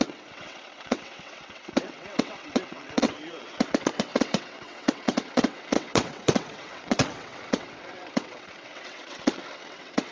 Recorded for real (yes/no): no